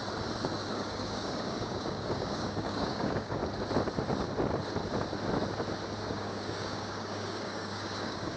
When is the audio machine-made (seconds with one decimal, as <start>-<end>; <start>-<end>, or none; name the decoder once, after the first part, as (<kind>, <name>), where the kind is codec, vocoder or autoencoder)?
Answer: 0.7-3.4 (codec, DAC); 6.0-8.4